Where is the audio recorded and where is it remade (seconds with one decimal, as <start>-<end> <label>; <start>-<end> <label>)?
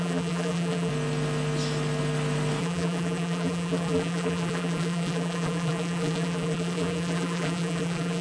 0.0-0.9 remade; 0.9-2.6 recorded; 2.6-8.2 remade